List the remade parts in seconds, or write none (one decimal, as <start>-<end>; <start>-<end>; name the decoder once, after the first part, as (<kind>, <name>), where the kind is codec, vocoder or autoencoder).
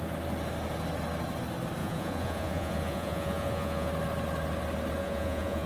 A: 1.8-3.9 (vocoder, Vocos); 5.0-5.7